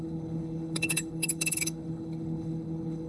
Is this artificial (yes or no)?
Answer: yes